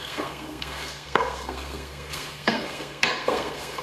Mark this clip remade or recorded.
remade